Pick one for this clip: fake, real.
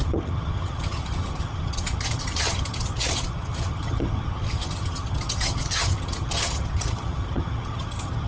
fake